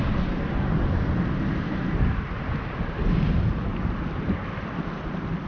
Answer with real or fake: real